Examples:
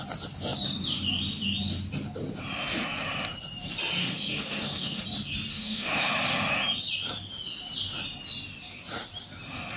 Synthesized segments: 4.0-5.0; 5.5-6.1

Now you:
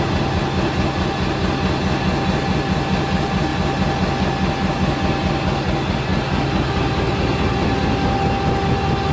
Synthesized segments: none